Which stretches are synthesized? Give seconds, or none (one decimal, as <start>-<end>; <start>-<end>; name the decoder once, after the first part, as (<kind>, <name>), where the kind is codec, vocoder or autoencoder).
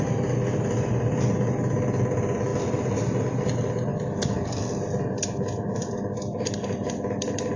none